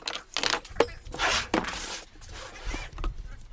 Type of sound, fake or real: real